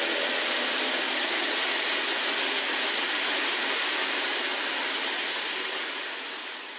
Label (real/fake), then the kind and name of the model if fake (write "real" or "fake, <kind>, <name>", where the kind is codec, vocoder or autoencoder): real